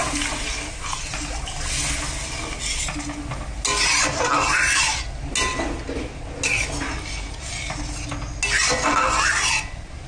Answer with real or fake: real